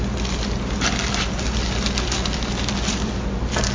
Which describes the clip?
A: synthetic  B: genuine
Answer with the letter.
B